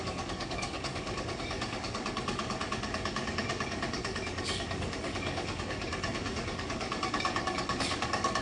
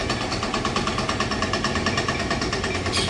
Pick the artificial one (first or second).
first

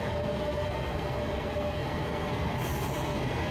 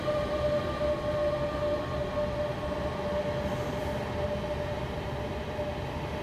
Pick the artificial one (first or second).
first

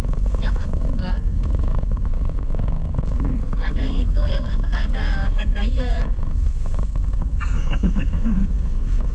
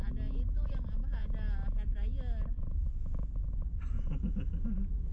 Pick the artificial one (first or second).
first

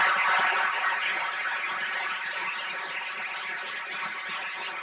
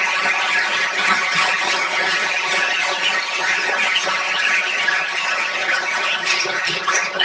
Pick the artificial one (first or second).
second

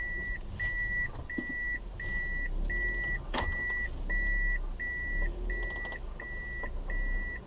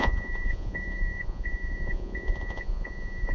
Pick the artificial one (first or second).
second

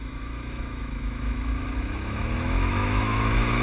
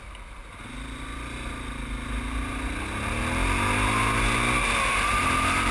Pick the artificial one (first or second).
first